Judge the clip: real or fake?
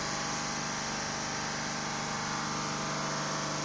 real